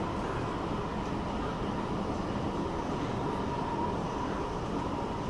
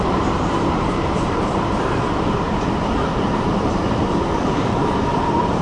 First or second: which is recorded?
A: first